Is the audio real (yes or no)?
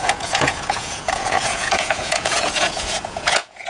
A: no